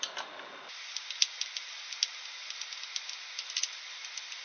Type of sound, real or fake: real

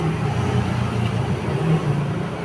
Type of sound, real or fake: real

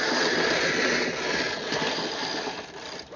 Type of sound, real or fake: real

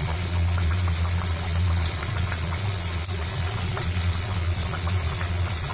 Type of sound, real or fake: fake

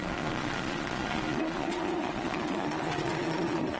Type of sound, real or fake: fake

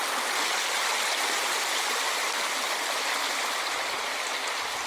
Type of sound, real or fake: real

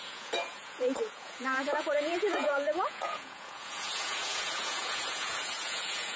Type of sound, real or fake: fake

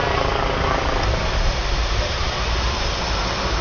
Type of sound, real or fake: real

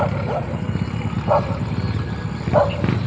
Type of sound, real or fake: real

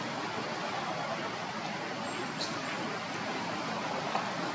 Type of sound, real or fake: real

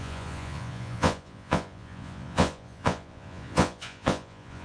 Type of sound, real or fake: fake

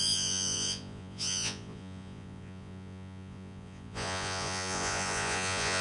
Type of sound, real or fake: fake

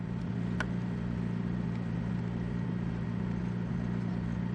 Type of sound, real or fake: real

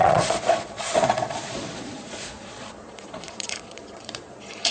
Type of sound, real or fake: fake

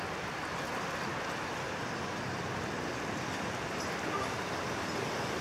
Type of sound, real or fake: real